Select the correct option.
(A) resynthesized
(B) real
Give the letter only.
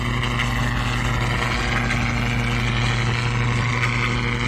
B